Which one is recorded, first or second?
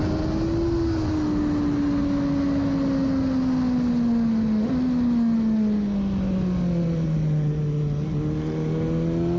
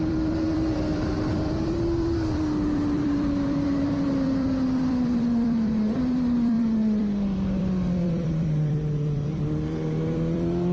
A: first